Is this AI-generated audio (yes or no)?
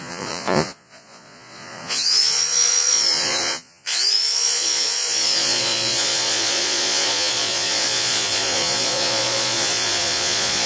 yes